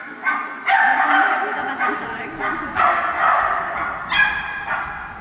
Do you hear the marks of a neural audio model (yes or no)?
no